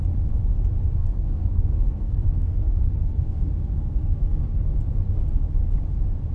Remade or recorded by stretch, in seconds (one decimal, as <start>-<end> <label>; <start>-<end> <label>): 0.0-1.0 recorded; 1.0-4.8 remade; 4.8-6.3 recorded